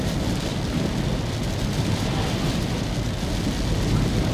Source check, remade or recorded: recorded